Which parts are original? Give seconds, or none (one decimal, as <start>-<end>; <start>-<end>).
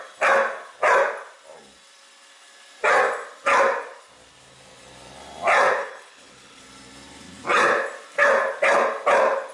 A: 0.0-5.8; 6.6-9.5